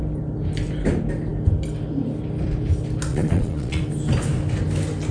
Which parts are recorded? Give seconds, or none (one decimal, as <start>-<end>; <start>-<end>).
0.0-3.1; 3.8-5.1